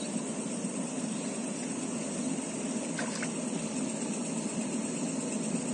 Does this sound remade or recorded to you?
recorded